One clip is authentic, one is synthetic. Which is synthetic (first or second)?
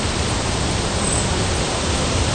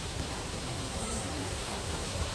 second